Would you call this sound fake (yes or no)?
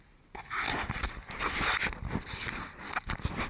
no